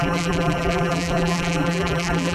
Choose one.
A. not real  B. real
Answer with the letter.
A